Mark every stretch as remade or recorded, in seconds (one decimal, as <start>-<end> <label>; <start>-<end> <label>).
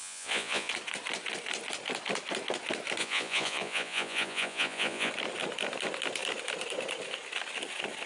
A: 0.0-0.7 remade; 0.7-3.0 recorded; 3.0-5.1 remade; 5.1-8.1 recorded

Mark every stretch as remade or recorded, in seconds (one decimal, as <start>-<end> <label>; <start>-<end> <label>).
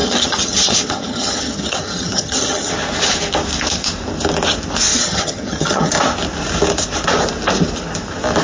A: 0.0-2.7 remade; 2.7-4.9 recorded; 4.9-5.9 remade; 5.9-8.4 recorded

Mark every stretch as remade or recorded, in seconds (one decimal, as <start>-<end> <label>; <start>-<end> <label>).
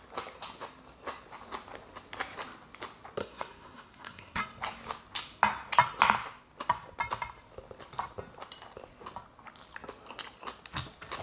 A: 0.0-3.2 recorded; 3.2-4.4 remade; 4.4-11.2 recorded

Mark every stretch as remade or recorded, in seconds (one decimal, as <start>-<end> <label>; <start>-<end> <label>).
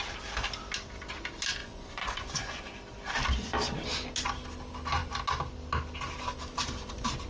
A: 0.0-1.6 recorded; 1.6-2.7 remade; 2.7-7.3 recorded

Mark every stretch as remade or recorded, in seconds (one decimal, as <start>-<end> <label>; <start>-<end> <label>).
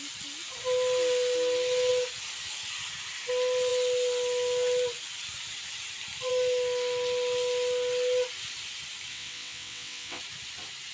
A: 0.0-9.1 recorded; 9.1-10.2 remade; 10.2-10.9 recorded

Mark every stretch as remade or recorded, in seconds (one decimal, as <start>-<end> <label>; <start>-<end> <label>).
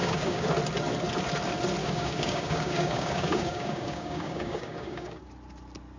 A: 0.0-0.5 remade; 0.5-1.8 recorded; 1.8-5.2 remade; 5.2-6.0 recorded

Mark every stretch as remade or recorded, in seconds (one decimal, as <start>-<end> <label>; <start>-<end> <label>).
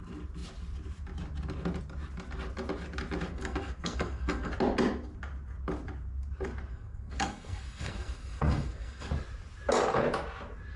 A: 0.0-3.3 recorded; 3.3-4.5 remade; 4.5-6.7 recorded; 6.7-9.1 remade; 9.1-10.8 recorded